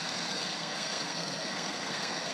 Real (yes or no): no